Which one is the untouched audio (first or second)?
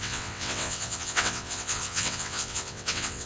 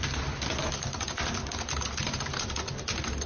second